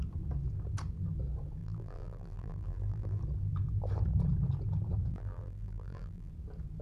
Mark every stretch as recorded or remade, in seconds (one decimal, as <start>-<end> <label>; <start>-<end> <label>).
0.0-1.6 recorded; 1.6-3.2 remade; 3.2-5.1 recorded; 5.1-6.3 remade; 6.3-6.8 recorded